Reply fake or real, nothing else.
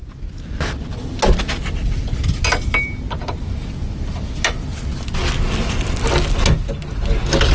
real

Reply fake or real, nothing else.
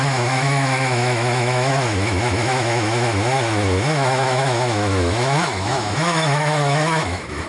fake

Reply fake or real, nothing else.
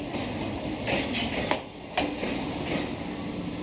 real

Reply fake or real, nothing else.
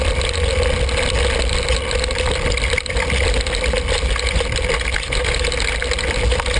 real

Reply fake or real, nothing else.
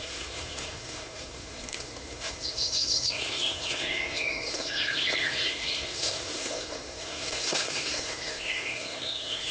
fake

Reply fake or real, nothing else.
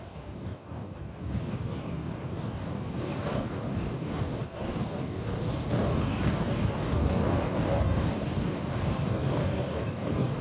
fake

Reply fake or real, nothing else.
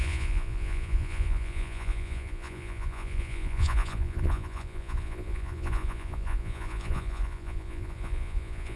fake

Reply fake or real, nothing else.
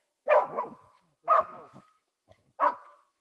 fake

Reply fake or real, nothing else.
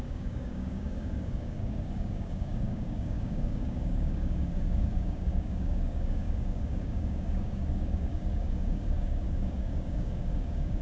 fake